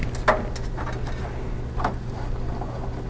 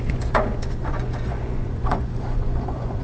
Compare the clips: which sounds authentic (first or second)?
first